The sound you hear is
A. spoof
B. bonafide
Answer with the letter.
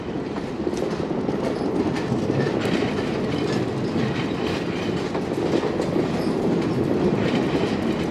B